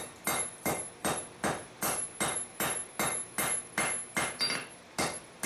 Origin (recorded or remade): recorded